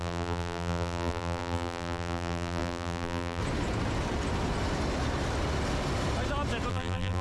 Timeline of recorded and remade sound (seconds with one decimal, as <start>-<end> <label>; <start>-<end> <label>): 0.0-3.4 remade; 3.4-6.7 recorded; 6.7-7.2 remade

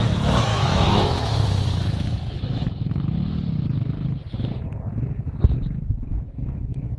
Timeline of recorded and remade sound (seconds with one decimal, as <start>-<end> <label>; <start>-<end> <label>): 0.0-0.5 recorded; 0.5-3.1 remade; 3.1-6.1 recorded; 6.1-7.0 remade

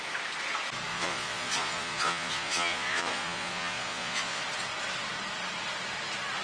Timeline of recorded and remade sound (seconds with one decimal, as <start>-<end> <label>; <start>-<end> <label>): 0.0-0.9 recorded; 0.9-4.4 remade; 4.4-6.4 recorded

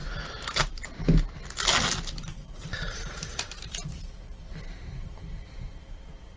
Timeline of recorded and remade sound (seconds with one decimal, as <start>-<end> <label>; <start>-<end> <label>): 0.0-2.4 recorded; 2.4-6.4 remade

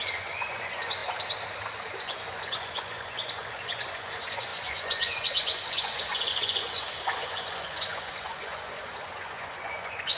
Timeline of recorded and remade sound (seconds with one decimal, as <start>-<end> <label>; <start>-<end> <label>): 0.0-1.0 remade; 1.0-2.0 recorded; 2.0-10.2 remade

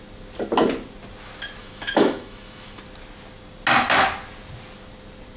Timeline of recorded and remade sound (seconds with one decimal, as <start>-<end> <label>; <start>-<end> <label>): 0.0-1.6 recorded; 1.6-2.8 remade; 2.8-5.4 recorded

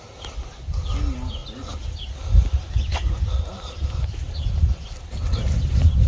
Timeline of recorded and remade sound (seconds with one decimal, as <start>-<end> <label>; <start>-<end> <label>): 0.0-6.1 recorded